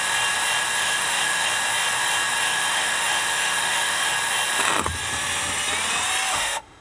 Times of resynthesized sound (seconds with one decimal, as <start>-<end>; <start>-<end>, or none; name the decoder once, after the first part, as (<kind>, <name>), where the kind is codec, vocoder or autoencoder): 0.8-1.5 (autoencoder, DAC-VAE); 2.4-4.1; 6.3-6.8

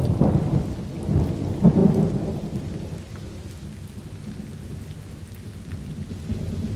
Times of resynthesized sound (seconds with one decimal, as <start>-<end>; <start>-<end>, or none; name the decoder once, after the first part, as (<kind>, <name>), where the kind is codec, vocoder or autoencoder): none

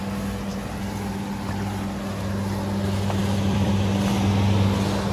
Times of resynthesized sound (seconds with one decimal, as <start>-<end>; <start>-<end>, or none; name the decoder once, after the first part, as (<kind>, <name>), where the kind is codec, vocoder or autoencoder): 3.2-3.7 (vocoder, BigVGAN v2)